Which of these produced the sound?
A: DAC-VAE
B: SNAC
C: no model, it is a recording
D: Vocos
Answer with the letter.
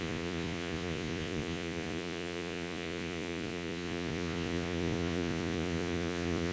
D